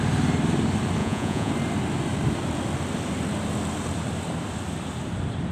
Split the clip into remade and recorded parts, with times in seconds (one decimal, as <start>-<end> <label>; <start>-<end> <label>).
0.0-1.0 recorded; 1.0-1.5 remade; 1.5-5.5 recorded